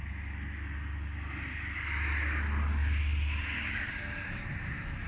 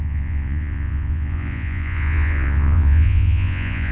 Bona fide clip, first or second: first